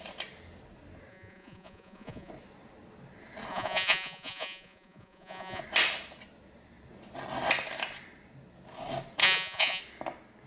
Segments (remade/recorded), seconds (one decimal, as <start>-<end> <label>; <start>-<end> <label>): 0.0-1.1 recorded; 1.1-2.3 remade; 2.3-3.5 recorded; 3.5-5.6 remade; 5.6-9.2 recorded; 9.2-9.8 remade; 9.8-10.5 recorded